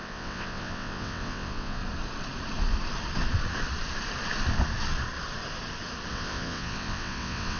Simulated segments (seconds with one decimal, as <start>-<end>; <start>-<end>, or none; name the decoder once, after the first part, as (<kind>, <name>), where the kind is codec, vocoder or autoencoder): 0.0-1.8 (vocoder, WaveNeXt); 6.1-7.6